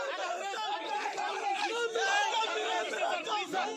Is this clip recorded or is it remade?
remade